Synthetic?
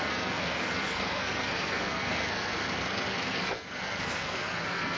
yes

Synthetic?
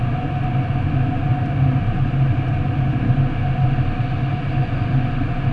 no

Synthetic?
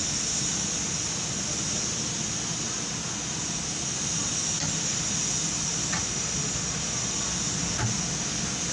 no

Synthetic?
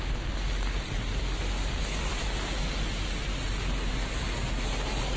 no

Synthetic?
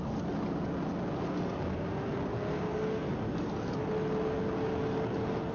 no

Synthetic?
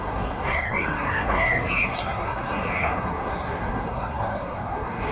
yes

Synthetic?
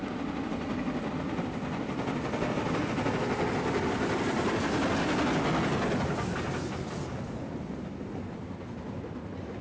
no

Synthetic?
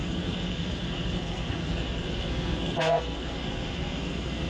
yes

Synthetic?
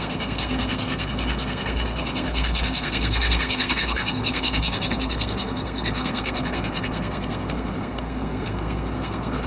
yes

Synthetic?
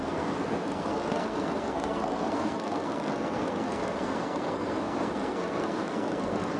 yes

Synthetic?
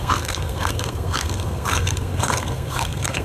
yes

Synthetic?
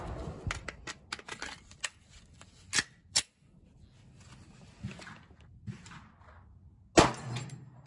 no